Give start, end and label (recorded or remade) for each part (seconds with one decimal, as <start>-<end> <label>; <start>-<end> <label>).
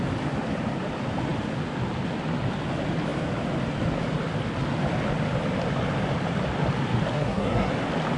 0.0-7.1 recorded; 7.1-7.7 remade; 7.7-8.2 recorded